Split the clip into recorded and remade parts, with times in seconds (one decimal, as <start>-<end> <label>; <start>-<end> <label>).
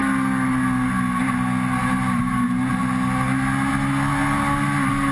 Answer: 0.0-5.1 recorded